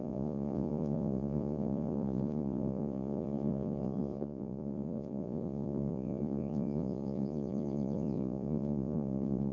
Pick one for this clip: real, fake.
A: fake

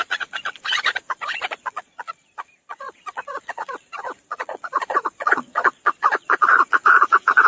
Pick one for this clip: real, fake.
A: fake